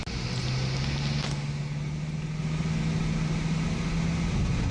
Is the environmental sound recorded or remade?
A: recorded